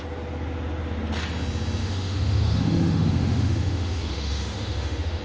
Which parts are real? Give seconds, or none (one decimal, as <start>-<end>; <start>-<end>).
0.0-1.8